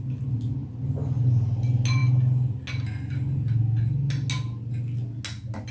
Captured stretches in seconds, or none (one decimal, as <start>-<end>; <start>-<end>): 0.0-5.7